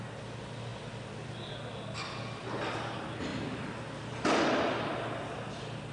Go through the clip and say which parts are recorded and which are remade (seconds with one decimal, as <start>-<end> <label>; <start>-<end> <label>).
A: 0.0-5.9 recorded